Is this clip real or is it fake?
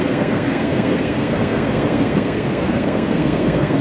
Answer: fake